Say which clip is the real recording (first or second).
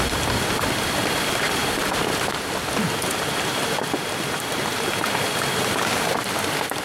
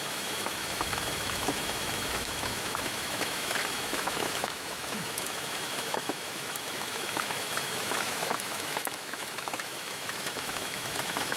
first